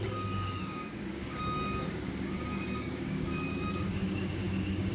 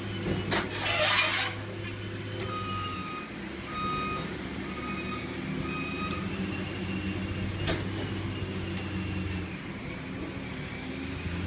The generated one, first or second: first